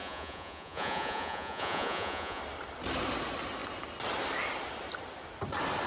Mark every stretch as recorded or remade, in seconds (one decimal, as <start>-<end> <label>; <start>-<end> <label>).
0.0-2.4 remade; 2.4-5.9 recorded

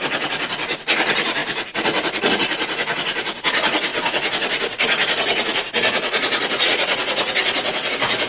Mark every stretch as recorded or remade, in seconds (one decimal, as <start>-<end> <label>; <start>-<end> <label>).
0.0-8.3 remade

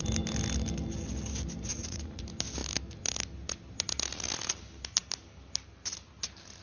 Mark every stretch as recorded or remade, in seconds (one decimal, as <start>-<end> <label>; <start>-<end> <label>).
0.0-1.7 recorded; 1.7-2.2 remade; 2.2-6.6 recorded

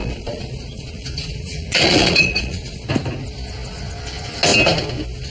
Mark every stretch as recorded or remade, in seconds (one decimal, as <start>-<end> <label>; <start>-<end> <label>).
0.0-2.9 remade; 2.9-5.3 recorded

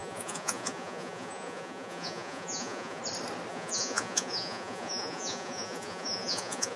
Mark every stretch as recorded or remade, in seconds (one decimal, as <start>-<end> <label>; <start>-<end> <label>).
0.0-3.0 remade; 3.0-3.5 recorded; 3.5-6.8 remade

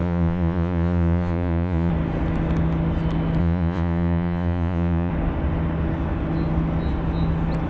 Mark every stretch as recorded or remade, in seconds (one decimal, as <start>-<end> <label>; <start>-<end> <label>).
0.0-1.9 remade; 1.9-3.4 recorded; 3.4-5.1 remade; 5.1-7.7 recorded